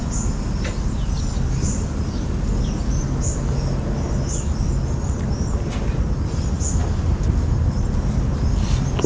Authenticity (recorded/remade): recorded